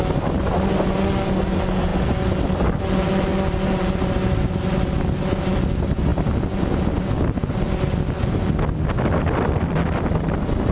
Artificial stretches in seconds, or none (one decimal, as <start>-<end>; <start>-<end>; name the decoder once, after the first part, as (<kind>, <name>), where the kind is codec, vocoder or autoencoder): none